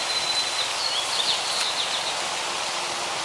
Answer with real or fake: real